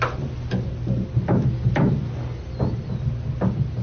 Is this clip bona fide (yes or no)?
yes